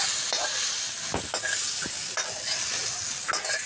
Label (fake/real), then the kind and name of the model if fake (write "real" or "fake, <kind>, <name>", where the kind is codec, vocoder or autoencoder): real